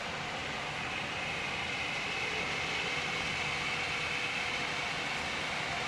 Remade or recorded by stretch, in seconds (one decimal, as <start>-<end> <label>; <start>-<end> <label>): 0.0-5.9 recorded